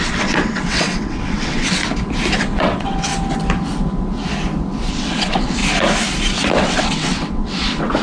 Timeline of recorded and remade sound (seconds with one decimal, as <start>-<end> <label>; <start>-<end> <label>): 0.0-1.8 remade; 1.8-2.4 recorded; 2.4-3.1 remade; 3.1-4.9 recorded; 4.9-5.6 remade; 5.6-6.6 recorded; 6.6-8.0 remade